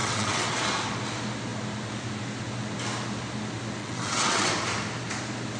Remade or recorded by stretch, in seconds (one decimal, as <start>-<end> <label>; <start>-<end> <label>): 0.0-0.5 remade; 0.5-3.8 recorded; 3.8-4.5 remade; 4.5-5.6 recorded